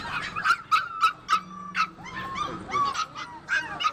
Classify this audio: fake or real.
real